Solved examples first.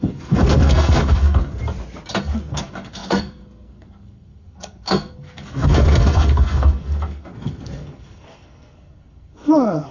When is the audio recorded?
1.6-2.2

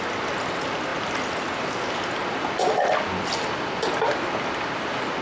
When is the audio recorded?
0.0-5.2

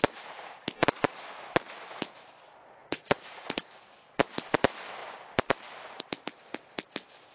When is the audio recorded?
0.0-2.8; 3.8-7.3

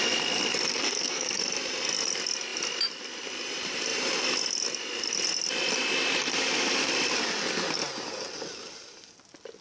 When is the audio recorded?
0.0-0.7; 1.4-9.6